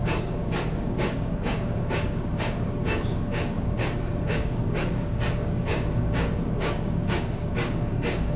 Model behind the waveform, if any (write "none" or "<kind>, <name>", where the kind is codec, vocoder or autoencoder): codec, DAC